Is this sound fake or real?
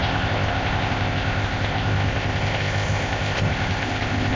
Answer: fake